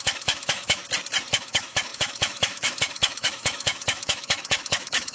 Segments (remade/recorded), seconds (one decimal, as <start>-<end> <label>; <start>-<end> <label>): 0.0-0.8 remade; 0.8-1.3 recorded; 1.3-5.1 remade